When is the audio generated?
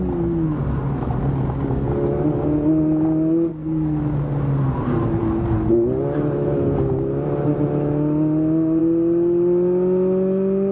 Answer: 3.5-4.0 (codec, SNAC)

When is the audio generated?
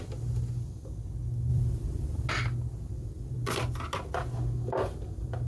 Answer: 1.5-2.3 (vocoder, BigVGAN v2); 3.0-3.8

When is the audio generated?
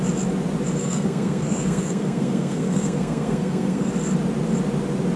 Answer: 0.8-3.9 (codec, SNAC)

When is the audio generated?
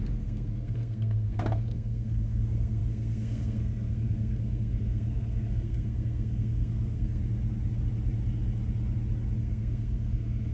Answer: 0.0-7.2 (codec, SNAC); 9.4-10.5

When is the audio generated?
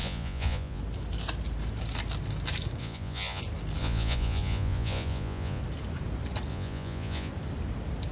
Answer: 0.0-0.8 (vocoder, Vocos); 2.8-3.4; 3.8-5.6; 6.5-7.3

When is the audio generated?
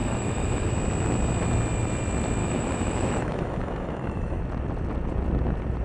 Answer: 0.0-0.7 (autoencoder, DAC-VAE); 2.4-4.4